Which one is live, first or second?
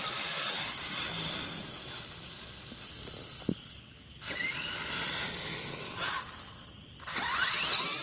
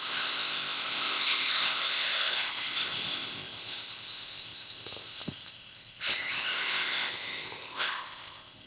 first